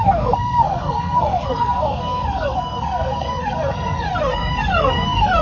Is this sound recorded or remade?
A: remade